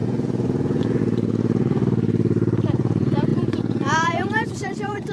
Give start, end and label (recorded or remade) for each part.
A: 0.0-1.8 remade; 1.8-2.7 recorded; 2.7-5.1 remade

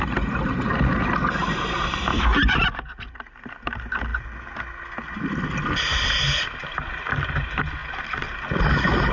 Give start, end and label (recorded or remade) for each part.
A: 0.0-9.1 recorded

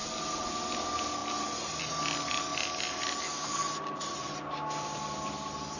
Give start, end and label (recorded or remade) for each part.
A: 0.0-5.8 recorded

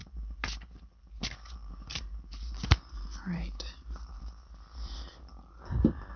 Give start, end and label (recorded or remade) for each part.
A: 0.0-1.6 recorded; 1.6-5.3 remade; 5.3-6.2 recorded

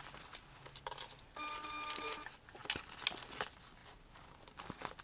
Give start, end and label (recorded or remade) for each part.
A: 0.0-3.8 recorded; 3.8-5.0 remade

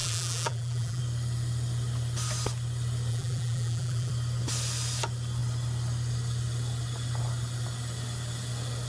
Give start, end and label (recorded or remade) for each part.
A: 0.0-1.0 remade; 1.0-3.1 recorded; 3.1-4.1 remade; 4.1-8.9 recorded

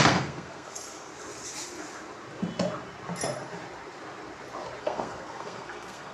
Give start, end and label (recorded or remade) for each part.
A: 0.0-1.1 remade; 1.1-4.8 recorded; 4.8-6.1 remade

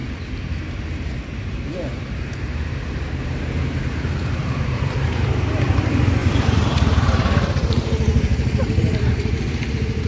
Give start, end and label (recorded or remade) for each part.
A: 0.0-1.4 recorded; 1.4-10.1 remade